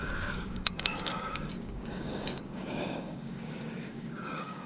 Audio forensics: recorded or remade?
remade